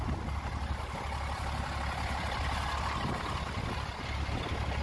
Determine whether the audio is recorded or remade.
recorded